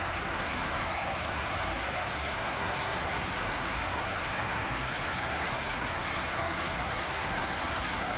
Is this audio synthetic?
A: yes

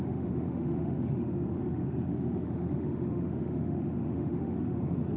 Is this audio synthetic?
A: yes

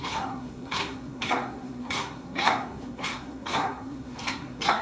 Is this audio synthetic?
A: yes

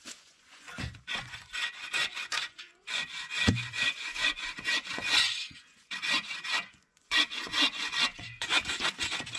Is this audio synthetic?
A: yes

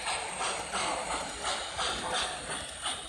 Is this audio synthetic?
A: no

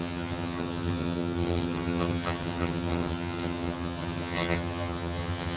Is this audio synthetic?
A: yes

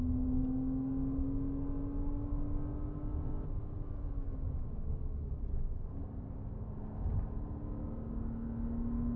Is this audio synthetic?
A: no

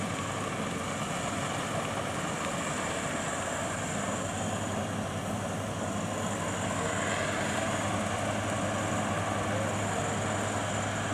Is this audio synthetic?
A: no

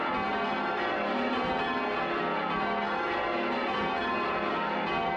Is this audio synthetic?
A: no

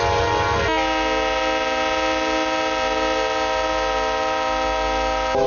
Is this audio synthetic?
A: no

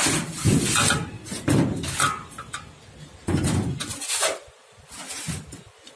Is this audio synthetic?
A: no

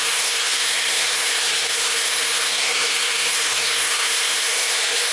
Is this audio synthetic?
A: yes